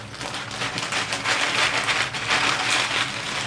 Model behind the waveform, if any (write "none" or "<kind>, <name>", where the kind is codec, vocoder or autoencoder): none